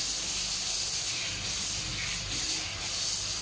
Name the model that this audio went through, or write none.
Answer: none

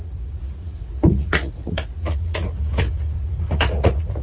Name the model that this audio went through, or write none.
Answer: vocoder, Vocos